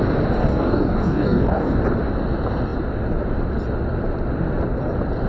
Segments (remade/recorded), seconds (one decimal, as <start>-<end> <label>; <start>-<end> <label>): 0.0-0.4 recorded; 0.4-1.8 remade; 1.8-5.3 recorded